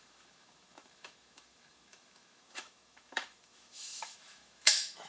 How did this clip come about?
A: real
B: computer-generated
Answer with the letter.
B